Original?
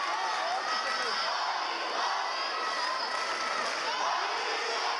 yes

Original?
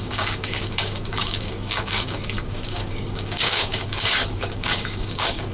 no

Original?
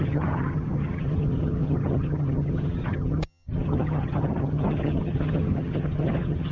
no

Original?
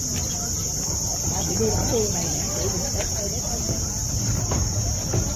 yes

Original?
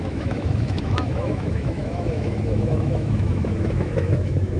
no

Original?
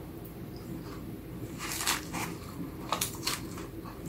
yes